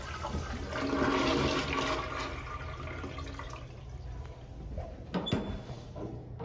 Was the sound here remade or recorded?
recorded